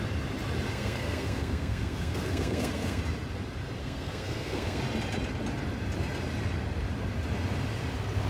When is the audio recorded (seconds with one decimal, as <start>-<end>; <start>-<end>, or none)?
0.0-0.7; 3.0-3.8; 4.8-8.3